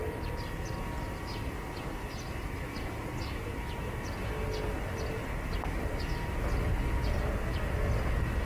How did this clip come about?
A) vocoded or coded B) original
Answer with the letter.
B